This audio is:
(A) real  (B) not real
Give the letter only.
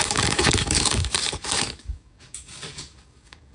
B